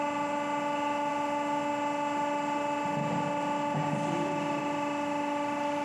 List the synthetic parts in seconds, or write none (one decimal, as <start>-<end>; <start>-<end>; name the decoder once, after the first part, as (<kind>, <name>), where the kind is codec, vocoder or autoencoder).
none